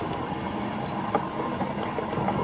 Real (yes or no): yes